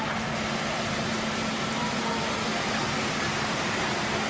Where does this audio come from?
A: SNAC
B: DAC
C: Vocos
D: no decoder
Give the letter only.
D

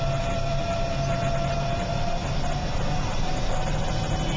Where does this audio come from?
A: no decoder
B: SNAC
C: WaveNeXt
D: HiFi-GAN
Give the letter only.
A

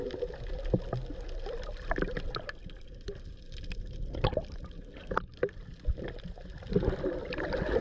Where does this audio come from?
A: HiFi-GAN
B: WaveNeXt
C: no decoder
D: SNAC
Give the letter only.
C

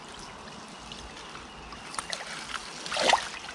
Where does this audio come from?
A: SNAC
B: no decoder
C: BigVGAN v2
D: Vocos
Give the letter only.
B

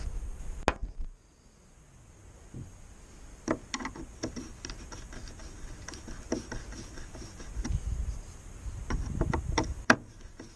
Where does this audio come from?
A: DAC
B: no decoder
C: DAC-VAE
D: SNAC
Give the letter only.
B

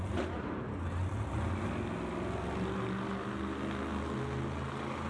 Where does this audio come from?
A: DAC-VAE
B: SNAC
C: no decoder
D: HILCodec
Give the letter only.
C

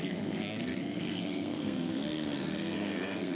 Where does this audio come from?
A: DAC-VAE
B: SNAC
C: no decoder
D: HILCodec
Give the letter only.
B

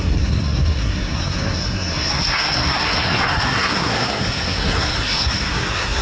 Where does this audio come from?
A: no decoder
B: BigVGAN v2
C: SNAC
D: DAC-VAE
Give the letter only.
C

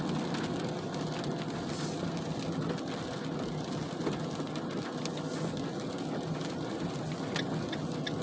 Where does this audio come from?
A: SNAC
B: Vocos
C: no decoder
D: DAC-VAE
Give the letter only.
C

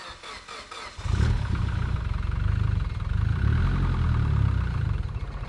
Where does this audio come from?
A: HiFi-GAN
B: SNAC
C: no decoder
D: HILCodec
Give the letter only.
C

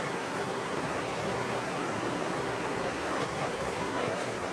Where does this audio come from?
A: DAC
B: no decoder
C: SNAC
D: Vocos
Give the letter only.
C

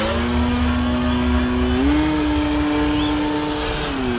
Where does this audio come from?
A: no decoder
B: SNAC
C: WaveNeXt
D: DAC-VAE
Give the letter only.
A